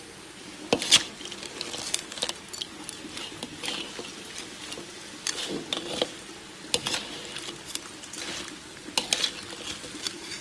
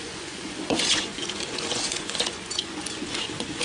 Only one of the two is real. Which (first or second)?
first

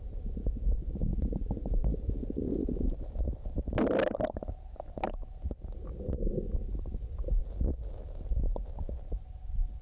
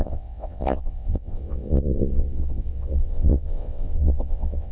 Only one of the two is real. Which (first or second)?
first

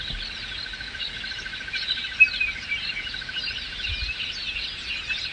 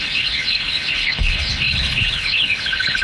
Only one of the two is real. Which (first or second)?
first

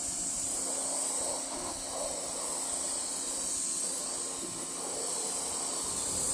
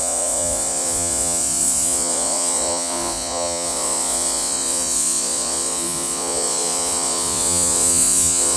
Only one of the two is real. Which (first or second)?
first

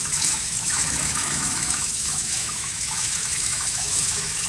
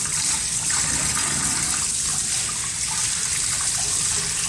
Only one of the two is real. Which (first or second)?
second